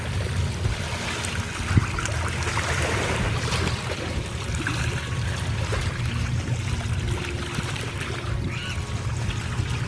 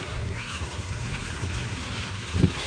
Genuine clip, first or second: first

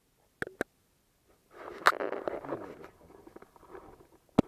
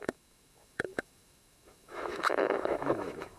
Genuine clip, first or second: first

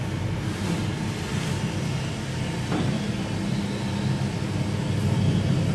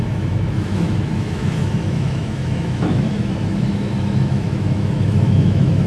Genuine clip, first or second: first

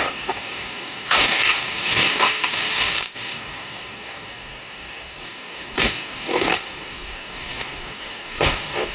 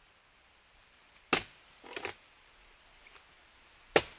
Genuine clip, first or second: second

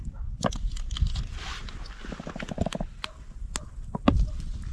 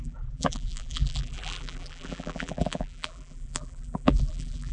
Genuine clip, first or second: first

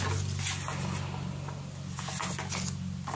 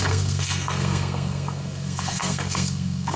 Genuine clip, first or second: first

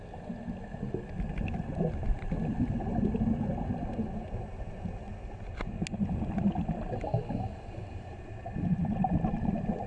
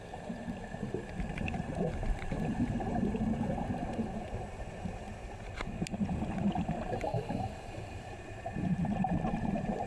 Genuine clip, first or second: first